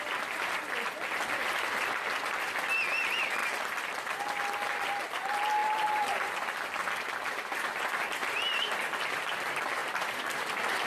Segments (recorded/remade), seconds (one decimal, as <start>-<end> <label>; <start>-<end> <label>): 0.0-9.8 recorded; 9.8-10.5 remade; 10.5-10.9 recorded